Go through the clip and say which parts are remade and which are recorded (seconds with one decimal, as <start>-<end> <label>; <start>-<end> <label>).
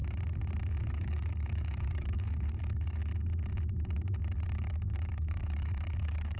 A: 0.0-0.8 recorded; 0.8-3.1 remade; 3.1-4.5 recorded; 4.5-6.4 remade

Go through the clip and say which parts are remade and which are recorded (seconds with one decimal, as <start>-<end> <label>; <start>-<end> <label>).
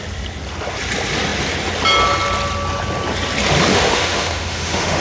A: 0.0-3.7 recorded; 3.7-5.0 remade